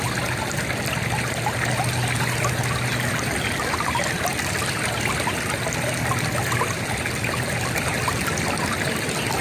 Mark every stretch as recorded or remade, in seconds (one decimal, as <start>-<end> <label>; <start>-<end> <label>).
0.0-9.4 recorded